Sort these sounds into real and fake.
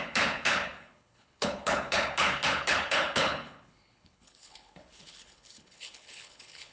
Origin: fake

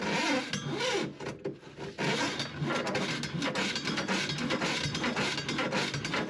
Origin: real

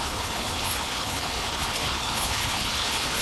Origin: fake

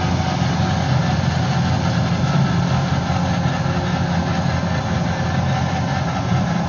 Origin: real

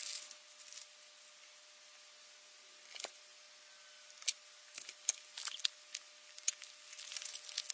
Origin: real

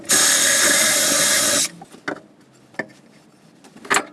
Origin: real